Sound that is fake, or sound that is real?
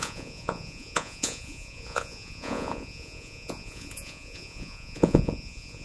fake